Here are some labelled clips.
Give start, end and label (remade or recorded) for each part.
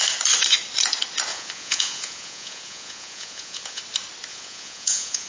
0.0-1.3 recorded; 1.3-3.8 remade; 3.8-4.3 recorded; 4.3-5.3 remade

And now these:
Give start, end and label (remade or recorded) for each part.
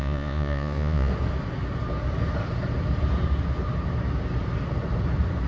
0.0-1.1 remade; 1.1-5.5 recorded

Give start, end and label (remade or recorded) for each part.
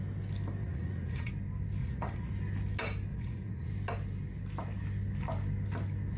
0.0-0.6 recorded; 0.6-1.3 remade; 1.3-1.8 recorded; 1.8-2.3 remade; 2.3-3.1 recorded; 3.1-3.7 remade; 3.7-6.2 recorded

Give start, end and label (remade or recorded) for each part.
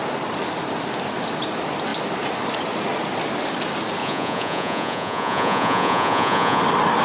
0.0-4.0 recorded; 4.0-6.6 remade; 6.6-7.0 recorded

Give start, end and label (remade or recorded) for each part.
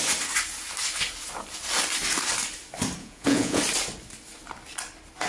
0.0-3.0 recorded; 3.0-3.6 remade; 3.6-5.3 recorded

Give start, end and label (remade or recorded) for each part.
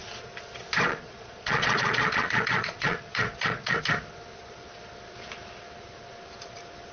0.0-0.9 recorded; 0.9-3.8 remade; 3.8-6.9 recorded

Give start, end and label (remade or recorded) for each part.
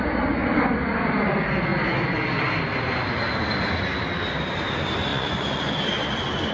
0.0-5.1 recorded; 5.1-5.7 remade; 5.7-6.5 recorded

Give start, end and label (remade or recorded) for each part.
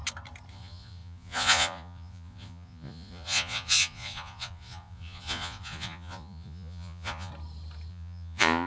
0.0-0.5 recorded; 0.5-7.3 remade; 7.3-7.9 recorded; 7.9-8.7 remade